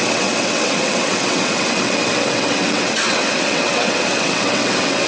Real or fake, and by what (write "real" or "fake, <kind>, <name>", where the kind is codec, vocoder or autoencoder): fake, vocoder, WaveNeXt